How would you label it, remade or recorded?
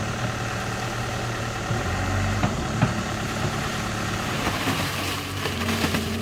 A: remade